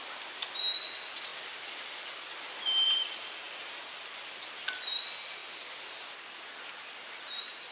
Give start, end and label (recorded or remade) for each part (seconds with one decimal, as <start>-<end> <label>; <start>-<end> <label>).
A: 0.0-7.7 recorded